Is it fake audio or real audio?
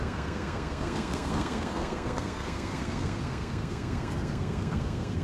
fake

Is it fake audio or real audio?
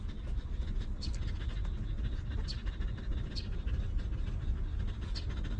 real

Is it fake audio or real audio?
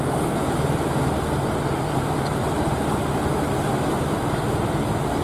real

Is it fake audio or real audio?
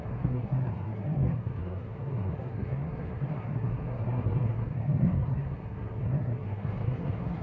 fake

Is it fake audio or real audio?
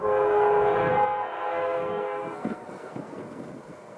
fake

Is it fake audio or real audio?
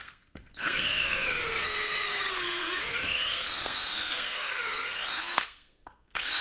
fake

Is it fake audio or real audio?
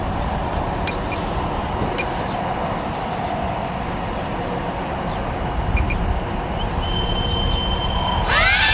real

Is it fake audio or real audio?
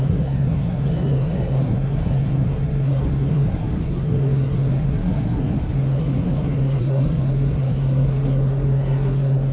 fake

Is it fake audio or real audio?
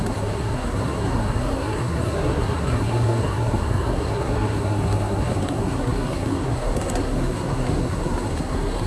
fake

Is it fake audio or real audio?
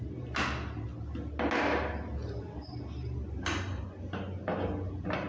real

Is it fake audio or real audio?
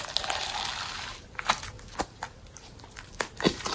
real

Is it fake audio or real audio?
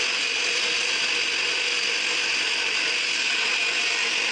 real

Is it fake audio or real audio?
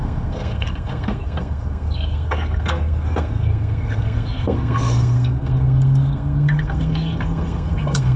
fake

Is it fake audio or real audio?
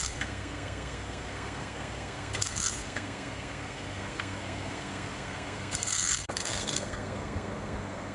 fake